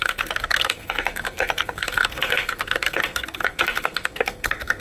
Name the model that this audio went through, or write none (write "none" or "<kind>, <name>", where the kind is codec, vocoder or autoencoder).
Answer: codec, SNAC